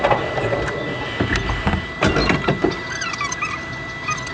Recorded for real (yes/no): yes